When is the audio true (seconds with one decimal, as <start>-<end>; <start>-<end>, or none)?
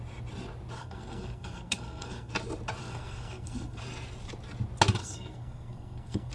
0.0-0.8; 2.3-2.8; 3.8-5.0